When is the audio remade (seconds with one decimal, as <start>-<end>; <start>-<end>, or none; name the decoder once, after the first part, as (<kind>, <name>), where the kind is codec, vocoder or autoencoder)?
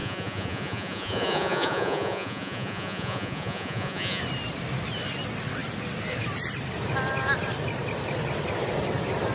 0.0-4.2 (vocoder, Vocos)